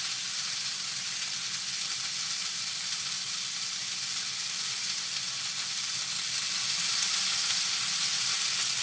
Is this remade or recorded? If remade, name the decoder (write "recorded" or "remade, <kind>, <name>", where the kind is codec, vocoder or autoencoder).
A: recorded